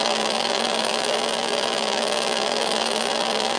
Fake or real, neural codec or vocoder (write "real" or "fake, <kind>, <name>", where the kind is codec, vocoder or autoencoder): fake, vocoder, BigVGAN v2